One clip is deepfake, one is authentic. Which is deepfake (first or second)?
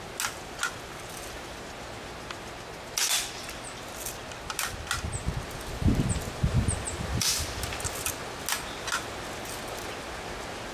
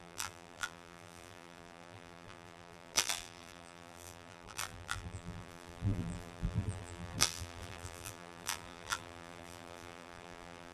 second